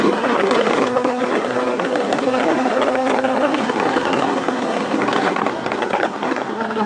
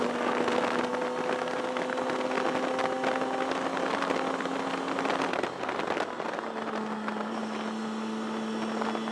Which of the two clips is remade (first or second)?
first